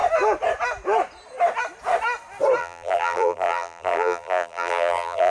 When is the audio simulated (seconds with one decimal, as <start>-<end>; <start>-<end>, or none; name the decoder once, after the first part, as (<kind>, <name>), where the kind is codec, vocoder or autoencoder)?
2.6-5.3 (vocoder, BigVGAN v2)